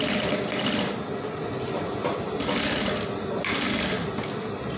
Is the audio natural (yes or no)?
yes